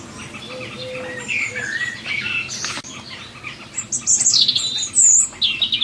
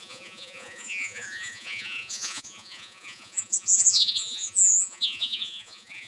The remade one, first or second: second